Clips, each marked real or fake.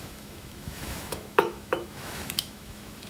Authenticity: fake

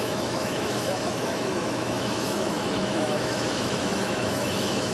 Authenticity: fake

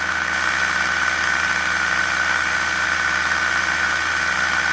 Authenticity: real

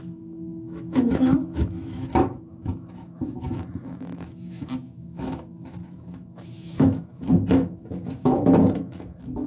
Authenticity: fake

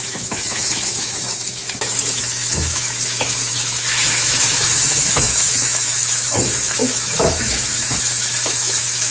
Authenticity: fake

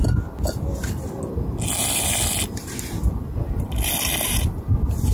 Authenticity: real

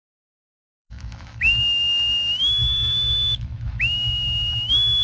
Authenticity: fake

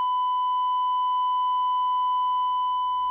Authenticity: fake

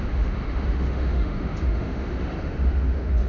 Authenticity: fake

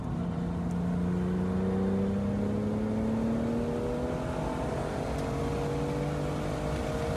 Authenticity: real